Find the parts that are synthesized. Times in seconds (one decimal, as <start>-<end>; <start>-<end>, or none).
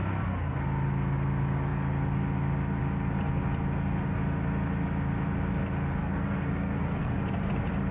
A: 6.0-7.2